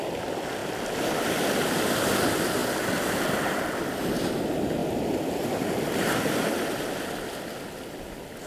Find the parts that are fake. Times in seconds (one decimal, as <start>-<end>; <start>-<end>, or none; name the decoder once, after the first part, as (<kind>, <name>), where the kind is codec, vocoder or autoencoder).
none